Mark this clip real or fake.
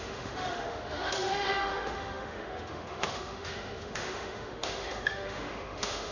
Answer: fake